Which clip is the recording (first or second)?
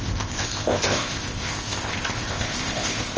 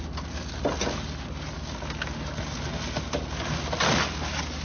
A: second